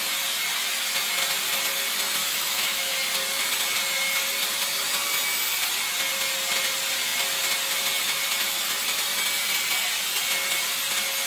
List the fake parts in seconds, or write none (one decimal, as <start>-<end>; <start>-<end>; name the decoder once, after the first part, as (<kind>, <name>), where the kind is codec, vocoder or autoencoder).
2.2-2.9 (autoencoder, DAC-VAE)